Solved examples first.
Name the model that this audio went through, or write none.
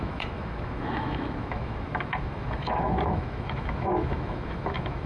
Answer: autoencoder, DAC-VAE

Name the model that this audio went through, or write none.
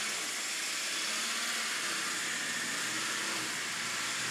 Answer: none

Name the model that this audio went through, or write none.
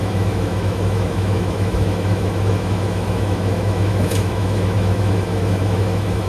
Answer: autoencoder, DAC-VAE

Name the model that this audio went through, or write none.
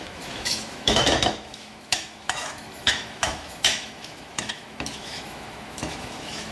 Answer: autoencoder, DAC-VAE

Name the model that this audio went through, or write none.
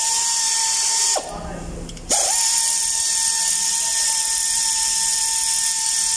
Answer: none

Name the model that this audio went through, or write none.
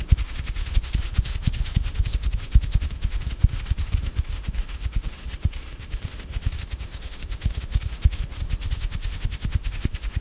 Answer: autoencoder, DAC-VAE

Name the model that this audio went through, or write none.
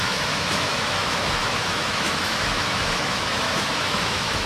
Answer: autoencoder, DAC-VAE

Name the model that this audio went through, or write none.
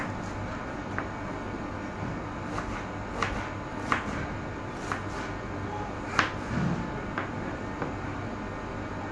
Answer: none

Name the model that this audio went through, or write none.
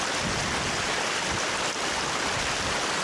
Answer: none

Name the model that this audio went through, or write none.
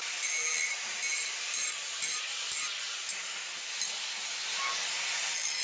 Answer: none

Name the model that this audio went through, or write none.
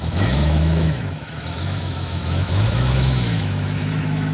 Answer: autoencoder, DAC-VAE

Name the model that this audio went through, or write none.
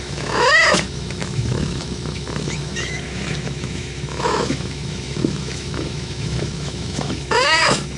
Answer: autoencoder, DAC-VAE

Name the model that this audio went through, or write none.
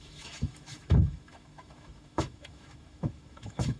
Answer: autoencoder, DAC-VAE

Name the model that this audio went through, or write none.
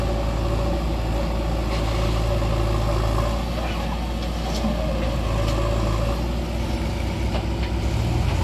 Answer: none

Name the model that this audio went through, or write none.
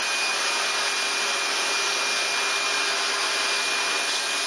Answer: none